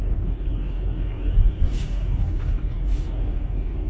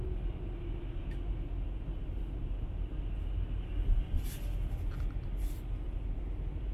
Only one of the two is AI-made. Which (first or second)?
first